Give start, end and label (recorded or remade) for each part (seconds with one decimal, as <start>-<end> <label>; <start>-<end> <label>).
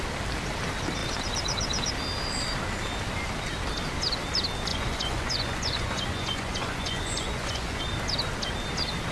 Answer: 0.0-4.7 recorded; 4.7-7.8 remade; 7.8-9.1 recorded